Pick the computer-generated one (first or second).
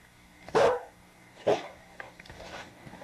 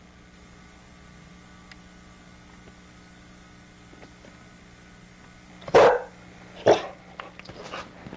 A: first